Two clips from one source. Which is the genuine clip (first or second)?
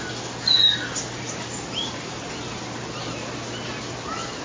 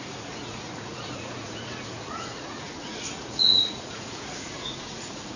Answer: first